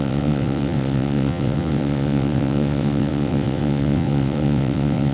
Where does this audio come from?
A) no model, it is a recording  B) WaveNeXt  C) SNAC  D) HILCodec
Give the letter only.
B